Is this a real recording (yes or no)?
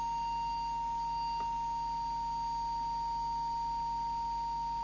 yes